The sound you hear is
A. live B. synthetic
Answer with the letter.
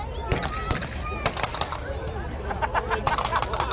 A